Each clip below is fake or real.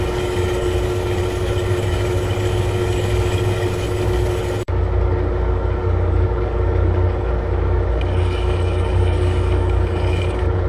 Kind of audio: fake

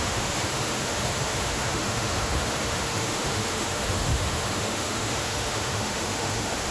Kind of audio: fake